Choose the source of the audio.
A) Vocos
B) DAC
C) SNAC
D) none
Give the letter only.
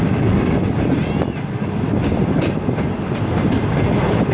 D